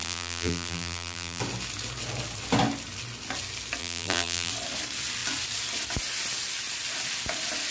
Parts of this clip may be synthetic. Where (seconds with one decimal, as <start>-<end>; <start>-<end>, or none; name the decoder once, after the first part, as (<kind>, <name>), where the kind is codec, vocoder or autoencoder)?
0.0-1.4 (vocoder, BigVGAN v2); 3.8-4.5